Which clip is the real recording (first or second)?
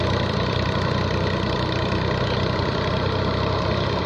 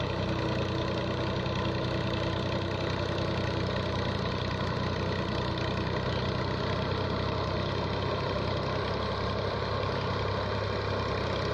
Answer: second